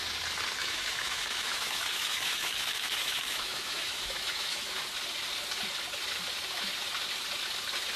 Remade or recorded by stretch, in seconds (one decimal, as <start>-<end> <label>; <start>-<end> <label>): 0.0-0.6 recorded; 0.6-4.8 remade; 4.8-8.0 recorded